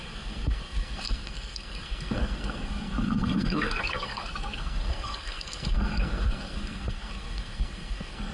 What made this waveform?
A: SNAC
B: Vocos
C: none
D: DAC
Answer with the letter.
A